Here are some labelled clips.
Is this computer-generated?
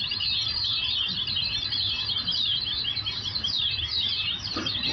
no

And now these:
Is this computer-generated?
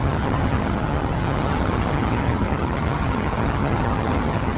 yes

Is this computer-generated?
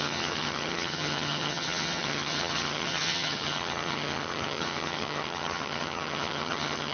yes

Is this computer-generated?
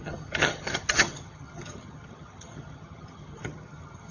yes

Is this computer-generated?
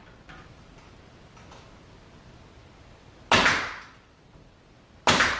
no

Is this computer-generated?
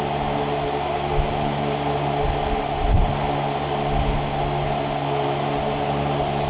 no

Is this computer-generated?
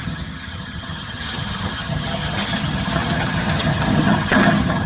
yes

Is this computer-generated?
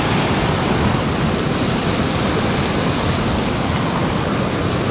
no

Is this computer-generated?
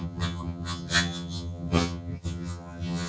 yes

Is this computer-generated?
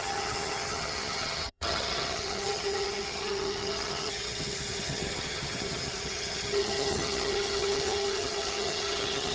yes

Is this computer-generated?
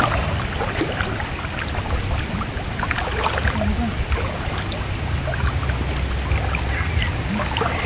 no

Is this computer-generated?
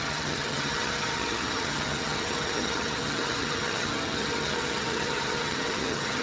yes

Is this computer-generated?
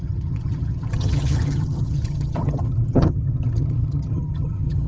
yes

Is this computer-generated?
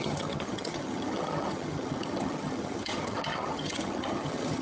yes